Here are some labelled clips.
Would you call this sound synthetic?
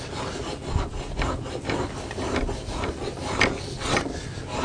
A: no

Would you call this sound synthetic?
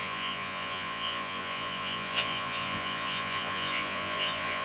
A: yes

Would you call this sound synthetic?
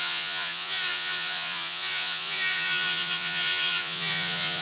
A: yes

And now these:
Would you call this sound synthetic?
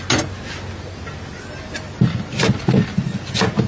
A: no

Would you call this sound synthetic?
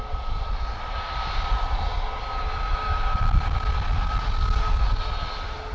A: no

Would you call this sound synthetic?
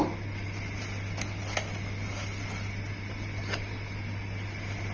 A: no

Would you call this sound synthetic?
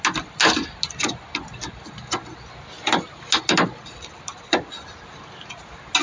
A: no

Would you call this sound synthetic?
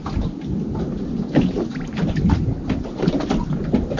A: no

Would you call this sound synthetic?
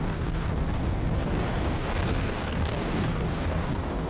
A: yes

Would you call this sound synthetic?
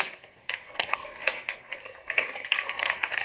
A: yes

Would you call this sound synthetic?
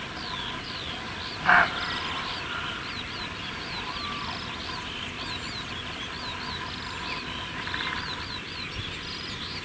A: no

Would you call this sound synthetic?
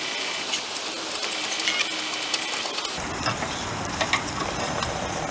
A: no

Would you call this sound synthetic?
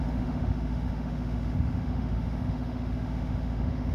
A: yes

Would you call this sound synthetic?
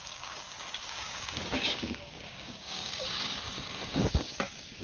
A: yes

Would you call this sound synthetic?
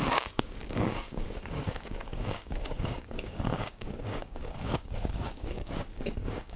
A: yes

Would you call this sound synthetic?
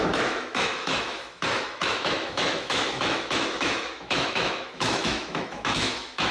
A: yes